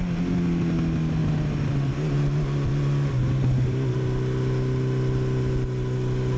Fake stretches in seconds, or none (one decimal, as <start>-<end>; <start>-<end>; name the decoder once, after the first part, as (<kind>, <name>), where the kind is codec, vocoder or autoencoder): none